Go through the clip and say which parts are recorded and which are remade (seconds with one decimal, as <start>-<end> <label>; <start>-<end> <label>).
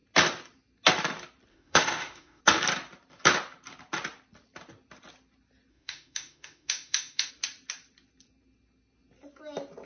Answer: 0.0-1.5 recorded; 1.5-2.4 remade; 2.4-5.7 recorded; 5.7-7.3 remade; 7.3-9.8 recorded